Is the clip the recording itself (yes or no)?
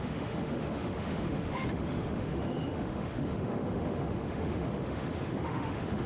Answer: no